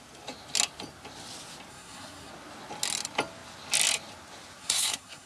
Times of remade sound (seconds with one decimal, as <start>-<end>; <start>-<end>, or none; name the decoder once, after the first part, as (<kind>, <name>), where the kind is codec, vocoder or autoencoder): 1.7-2.3 (codec, SNAC); 4.6-5.3